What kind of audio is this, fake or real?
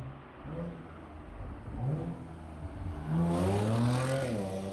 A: real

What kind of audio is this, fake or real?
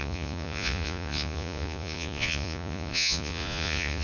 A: fake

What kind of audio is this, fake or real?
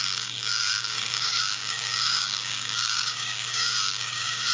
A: fake